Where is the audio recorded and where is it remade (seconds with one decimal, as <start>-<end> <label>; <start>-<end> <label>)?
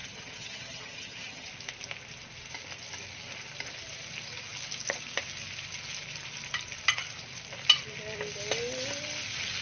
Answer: 0.0-1.5 remade; 1.5-9.6 recorded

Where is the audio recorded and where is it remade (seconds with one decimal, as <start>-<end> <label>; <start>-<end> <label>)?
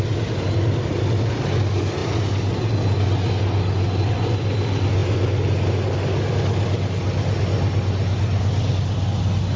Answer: 0.0-9.6 recorded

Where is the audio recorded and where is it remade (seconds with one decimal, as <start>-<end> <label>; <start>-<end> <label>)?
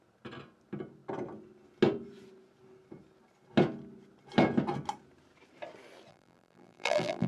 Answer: 0.0-6.1 recorded; 6.1-7.3 remade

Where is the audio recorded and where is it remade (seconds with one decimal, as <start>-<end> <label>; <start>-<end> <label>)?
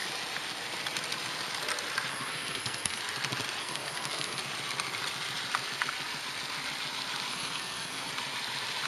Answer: 0.0-2.1 recorded; 2.1-3.0 remade; 3.0-3.6 recorded; 3.6-4.4 remade; 4.4-7.3 recorded; 7.3-8.1 remade; 8.1-8.9 recorded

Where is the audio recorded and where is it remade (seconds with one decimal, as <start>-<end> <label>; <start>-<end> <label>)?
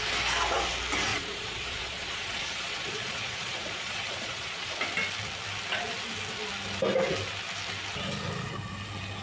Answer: 0.0-1.1 recorded; 1.1-4.7 remade; 4.7-9.2 recorded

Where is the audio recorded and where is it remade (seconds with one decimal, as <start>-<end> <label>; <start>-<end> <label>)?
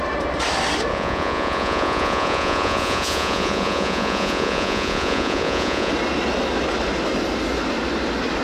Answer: 0.0-0.9 recorded; 0.9-5.9 remade; 5.9-8.4 recorded